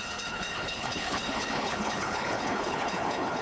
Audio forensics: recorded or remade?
remade